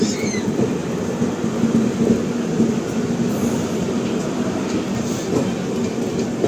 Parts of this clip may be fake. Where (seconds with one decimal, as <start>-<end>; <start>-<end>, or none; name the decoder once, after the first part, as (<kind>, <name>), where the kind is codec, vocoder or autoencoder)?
none

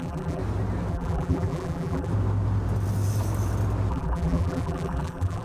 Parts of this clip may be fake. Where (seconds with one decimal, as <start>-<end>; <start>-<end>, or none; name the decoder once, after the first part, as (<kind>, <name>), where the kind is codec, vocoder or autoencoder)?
0.0-0.4 (vocoder, BigVGAN v2); 0.9-2.1; 3.9-5.4

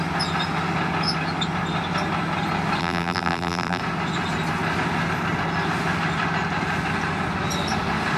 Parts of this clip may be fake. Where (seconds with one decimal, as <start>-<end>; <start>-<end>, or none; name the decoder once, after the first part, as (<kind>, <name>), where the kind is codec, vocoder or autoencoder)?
2.8-3.8 (vocoder, BigVGAN v2)

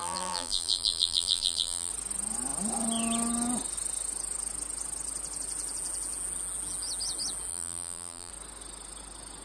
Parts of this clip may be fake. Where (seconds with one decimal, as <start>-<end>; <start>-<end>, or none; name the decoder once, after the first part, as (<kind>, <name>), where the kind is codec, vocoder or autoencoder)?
0.0-1.9 (vocoder, BigVGAN v2); 7.5-8.3

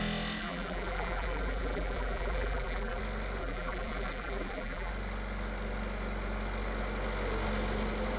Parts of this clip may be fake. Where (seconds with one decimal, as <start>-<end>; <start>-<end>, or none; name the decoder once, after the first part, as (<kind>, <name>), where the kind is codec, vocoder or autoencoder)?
0.4-3.0 (vocoder, BigVGAN v2); 3.4-4.9